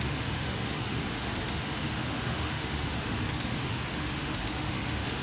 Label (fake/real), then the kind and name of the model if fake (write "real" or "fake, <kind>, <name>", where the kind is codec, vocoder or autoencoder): fake, autoencoder, DAC-VAE